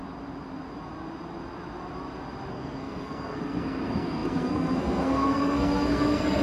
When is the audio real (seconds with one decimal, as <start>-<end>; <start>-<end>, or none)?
0.0-2.5